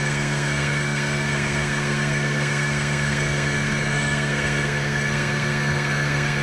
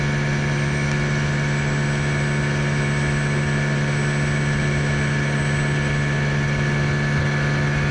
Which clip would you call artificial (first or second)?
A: first